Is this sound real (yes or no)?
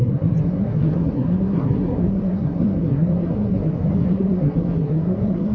no